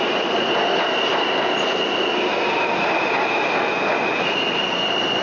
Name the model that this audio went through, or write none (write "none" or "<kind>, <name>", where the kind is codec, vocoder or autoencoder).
none